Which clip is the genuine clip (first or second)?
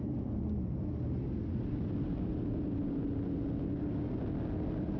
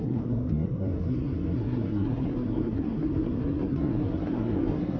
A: first